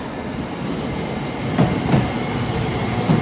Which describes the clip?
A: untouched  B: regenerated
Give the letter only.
A